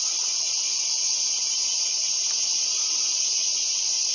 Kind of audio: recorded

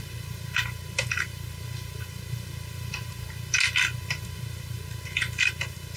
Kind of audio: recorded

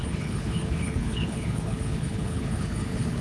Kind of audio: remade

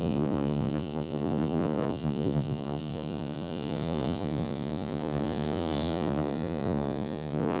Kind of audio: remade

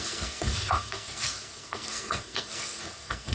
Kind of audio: remade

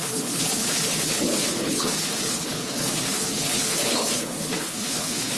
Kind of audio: remade